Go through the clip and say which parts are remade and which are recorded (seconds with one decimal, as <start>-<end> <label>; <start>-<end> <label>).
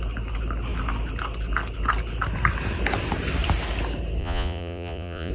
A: 0.0-4.2 recorded; 4.2-5.3 remade